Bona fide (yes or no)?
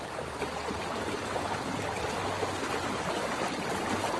yes